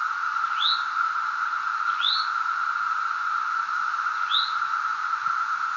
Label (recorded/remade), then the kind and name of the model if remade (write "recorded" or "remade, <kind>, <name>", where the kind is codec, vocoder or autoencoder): remade, vocoder, Vocos